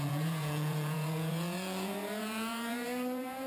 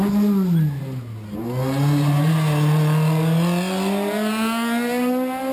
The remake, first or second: first